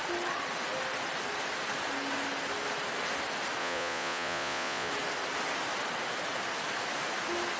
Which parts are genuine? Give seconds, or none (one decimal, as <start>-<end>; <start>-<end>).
0.0-3.6; 4.9-7.6